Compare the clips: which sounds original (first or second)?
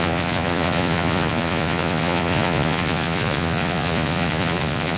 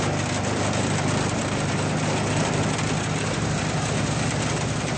second